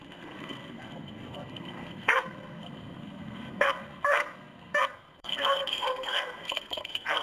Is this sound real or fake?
fake